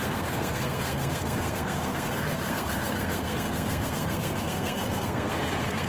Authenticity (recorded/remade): remade